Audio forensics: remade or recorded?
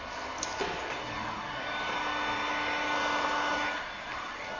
recorded